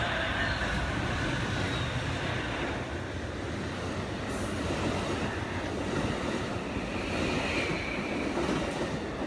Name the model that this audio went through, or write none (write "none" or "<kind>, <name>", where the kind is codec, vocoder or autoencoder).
none